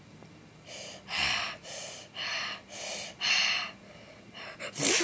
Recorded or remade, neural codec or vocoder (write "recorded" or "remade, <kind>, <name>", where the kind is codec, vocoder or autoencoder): recorded